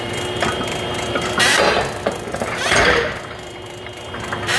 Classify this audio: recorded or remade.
remade